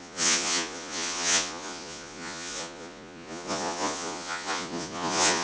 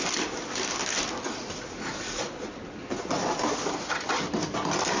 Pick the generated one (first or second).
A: first